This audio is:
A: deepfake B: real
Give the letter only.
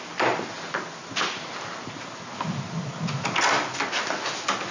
B